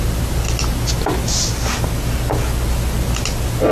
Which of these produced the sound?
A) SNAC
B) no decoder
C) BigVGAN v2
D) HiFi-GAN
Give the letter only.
B